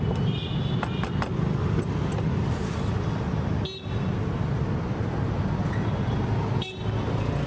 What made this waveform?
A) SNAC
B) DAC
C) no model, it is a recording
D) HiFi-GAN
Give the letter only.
C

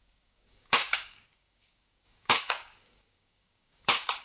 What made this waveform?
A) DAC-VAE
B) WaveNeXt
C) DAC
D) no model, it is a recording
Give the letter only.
C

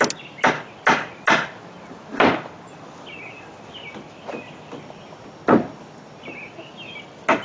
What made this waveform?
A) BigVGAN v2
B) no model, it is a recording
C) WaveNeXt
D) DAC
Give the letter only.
B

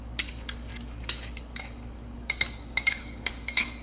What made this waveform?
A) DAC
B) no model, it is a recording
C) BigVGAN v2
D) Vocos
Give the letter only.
A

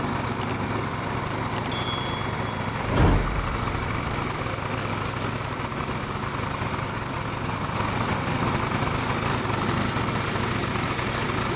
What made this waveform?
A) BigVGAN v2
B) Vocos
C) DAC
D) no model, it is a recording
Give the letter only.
D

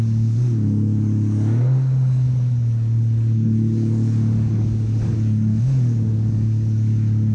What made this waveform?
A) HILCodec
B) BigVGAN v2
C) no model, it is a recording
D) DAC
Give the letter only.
D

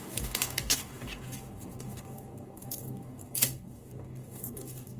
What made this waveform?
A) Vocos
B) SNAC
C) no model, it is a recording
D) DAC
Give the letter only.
D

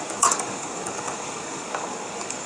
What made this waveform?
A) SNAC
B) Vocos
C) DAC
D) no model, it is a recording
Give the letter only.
C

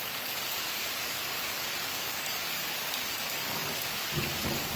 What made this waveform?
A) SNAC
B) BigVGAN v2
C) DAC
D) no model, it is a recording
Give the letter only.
C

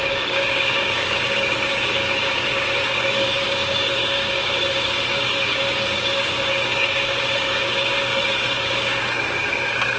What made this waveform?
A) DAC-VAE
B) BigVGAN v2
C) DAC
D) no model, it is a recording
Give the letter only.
C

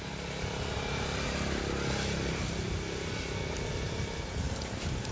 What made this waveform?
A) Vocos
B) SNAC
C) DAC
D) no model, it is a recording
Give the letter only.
D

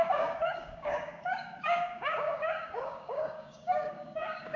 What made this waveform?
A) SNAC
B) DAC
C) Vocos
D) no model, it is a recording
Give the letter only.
B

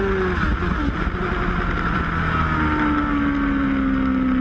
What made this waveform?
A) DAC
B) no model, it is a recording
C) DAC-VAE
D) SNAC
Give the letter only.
B